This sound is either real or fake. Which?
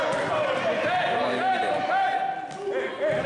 real